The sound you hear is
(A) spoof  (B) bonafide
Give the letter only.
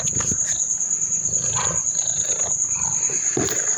B